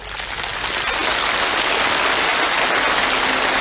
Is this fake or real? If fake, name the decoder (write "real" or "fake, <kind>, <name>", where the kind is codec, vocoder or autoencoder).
real